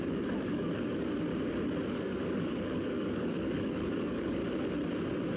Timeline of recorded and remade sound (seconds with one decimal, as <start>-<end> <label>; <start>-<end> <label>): 0.0-1.3 remade; 1.3-1.8 recorded; 1.8-4.4 remade; 4.4-5.4 recorded